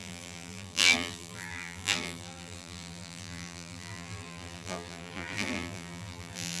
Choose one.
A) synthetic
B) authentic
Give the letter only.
A